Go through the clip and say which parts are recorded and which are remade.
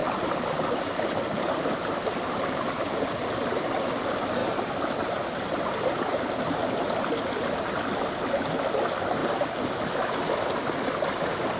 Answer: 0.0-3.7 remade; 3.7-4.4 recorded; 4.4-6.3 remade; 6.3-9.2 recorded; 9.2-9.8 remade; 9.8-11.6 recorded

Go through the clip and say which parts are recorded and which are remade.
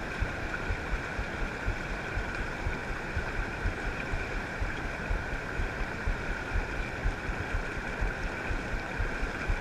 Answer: 0.0-7.0 remade; 7.0-8.0 recorded; 8.0-9.6 remade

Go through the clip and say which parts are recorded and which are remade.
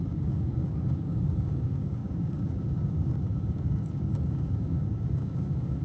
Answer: 0.0-5.8 remade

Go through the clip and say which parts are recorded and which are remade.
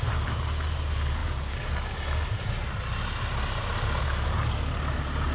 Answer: 0.0-5.3 recorded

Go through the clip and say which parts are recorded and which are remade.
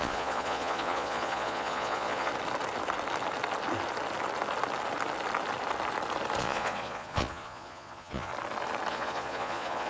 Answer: 0.0-2.3 remade; 2.3-6.4 recorded; 6.4-8.3 remade; 8.3-8.9 recorded; 8.9-9.9 remade